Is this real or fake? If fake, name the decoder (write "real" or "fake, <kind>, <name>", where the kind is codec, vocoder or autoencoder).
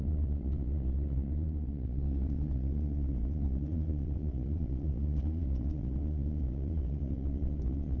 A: fake, vocoder, Vocos